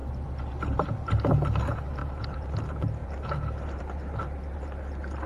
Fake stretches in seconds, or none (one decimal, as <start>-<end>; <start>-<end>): 0.0-1.2; 2.0-2.6; 3.0-3.8